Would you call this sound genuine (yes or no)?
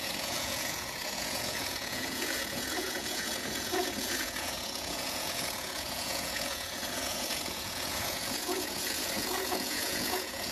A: no